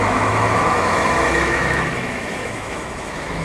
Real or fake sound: fake